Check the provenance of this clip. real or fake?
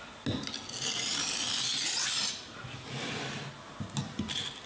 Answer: real